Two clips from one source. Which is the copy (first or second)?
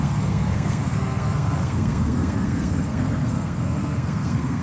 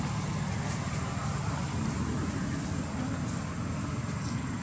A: first